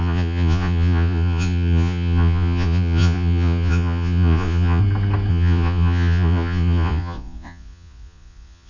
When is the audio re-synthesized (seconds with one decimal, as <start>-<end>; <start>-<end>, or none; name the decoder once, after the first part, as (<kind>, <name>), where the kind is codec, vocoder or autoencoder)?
0.0-4.8 (vocoder, Vocos); 5.3-8.7

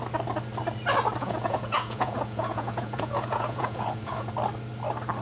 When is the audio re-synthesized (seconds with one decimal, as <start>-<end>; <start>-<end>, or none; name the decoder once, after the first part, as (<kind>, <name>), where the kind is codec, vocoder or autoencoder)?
1.2-4.3 (vocoder, Vocos)

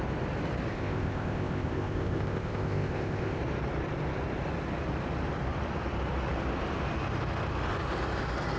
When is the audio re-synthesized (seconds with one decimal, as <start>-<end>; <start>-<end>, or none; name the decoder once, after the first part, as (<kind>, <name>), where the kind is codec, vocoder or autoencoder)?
0.7-3.4 (codec, ZipCodec)

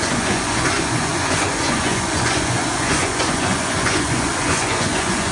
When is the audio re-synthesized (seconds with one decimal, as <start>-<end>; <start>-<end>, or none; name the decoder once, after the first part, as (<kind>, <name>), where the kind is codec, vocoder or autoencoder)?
0.0-5.3 (vocoder, Vocos)

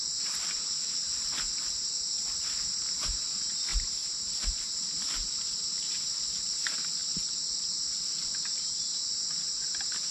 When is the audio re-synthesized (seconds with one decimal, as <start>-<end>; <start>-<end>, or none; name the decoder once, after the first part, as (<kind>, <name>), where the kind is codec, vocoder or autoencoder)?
1.8-2.4 (vocoder, BigVGAN v2); 3.7-4.2; 7.0-7.5

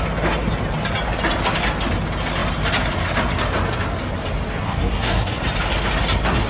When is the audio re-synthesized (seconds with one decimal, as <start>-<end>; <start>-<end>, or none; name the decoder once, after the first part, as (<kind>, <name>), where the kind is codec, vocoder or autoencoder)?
4.6-5.4 (codec, SNAC)